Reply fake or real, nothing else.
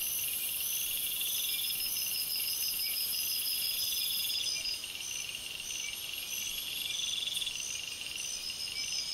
real